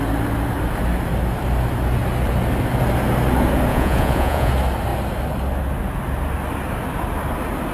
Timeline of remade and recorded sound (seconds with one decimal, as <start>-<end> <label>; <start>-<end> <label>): 0.0-3.7 recorded; 3.7-4.5 remade; 4.5-7.7 recorded